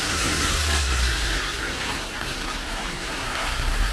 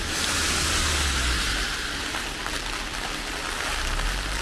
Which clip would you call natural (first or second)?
second